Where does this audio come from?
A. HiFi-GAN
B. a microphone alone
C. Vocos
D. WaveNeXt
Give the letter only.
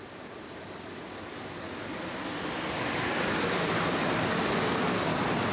B